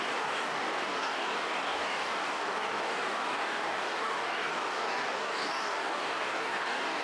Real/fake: fake